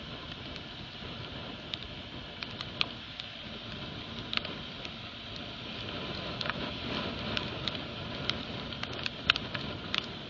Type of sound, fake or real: real